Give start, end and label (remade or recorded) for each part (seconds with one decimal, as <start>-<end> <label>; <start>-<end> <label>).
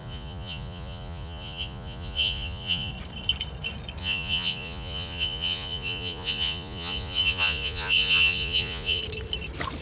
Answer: 0.0-2.9 remade; 2.9-4.0 recorded; 4.0-9.0 remade; 9.0-9.8 recorded